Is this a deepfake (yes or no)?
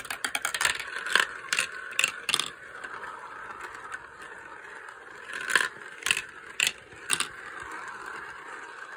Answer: yes